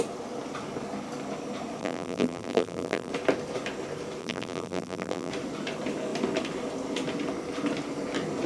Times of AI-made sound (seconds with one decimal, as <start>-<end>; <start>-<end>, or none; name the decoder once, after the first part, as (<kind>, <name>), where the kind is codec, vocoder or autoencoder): 1.8-3.1 (vocoder, BigVGAN v2); 4.2-5.3